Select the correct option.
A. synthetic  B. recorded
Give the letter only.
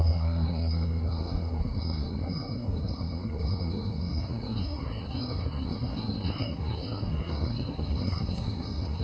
A